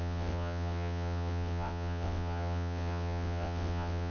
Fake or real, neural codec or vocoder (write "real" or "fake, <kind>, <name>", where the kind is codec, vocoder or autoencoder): fake, vocoder, WaveNeXt